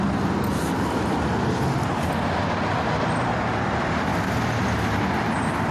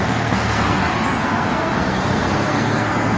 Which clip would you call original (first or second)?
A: first